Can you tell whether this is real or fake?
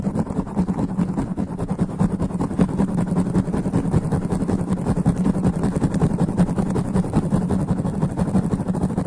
real